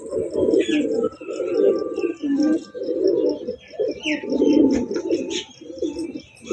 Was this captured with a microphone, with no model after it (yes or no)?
yes